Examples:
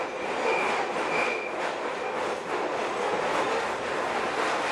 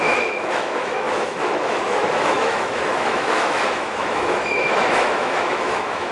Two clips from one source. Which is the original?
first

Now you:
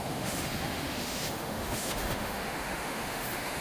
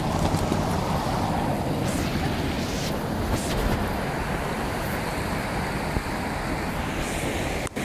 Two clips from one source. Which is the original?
second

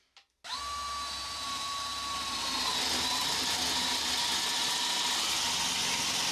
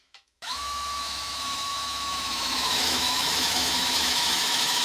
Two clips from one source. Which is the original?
first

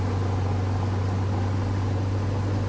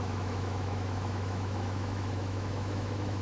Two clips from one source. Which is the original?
first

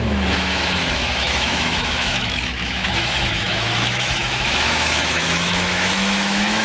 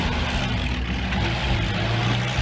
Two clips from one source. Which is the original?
second